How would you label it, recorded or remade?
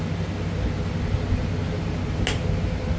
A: recorded